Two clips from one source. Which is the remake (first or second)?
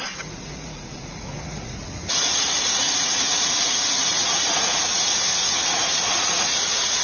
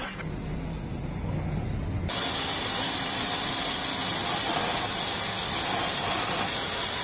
first